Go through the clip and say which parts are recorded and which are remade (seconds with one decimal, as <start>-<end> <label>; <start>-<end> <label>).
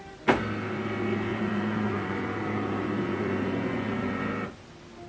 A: 0.0-1.3 recorded; 1.3-4.3 remade; 4.3-5.1 recorded